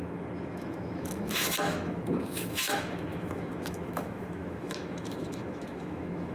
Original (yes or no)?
no